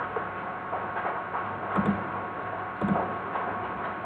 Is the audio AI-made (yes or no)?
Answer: no